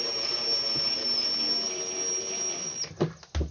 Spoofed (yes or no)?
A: no